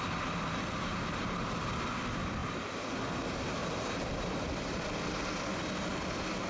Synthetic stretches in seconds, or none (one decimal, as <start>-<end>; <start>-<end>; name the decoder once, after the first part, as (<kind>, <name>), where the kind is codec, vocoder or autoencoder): 0.9-1.6 (vocoder, BigVGAN v2); 2.4-2.9; 3.6-4.9